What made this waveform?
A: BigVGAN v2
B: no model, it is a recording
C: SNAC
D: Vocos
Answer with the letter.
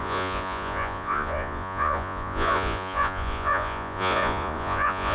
D